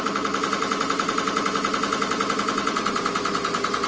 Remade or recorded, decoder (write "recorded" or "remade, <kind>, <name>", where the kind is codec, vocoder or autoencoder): recorded